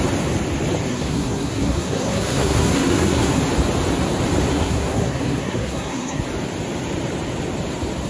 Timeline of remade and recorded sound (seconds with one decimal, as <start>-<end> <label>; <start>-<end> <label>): 0.0-0.9 recorded; 0.9-3.4 remade; 3.4-4.5 recorded; 4.5-6.2 remade; 6.2-8.1 recorded

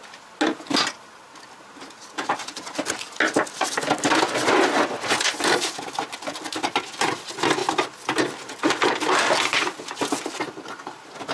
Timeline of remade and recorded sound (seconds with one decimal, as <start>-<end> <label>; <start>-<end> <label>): 0.0-11.3 recorded

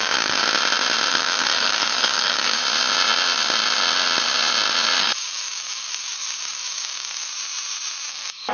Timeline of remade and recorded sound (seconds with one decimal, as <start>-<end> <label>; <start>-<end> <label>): 0.0-0.4 remade; 0.4-1.1 recorded; 1.1-2.6 remade; 2.6-5.0 recorded; 5.0-7.3 remade; 7.3-8.1 recorded; 8.1-8.5 remade

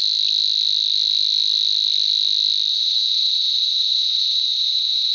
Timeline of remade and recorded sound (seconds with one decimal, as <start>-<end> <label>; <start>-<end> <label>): 0.0-2.7 recorded; 2.7-5.1 remade

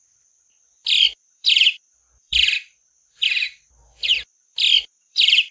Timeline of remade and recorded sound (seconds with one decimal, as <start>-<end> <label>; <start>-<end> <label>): 0.0-5.5 remade

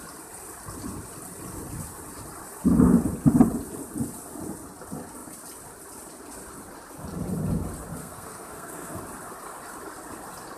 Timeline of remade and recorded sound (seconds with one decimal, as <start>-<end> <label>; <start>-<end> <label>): 0.0-8.0 recorded; 8.0-9.0 remade; 9.0-10.6 recorded